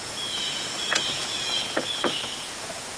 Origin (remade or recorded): remade